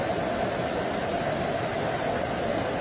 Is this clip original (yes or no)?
yes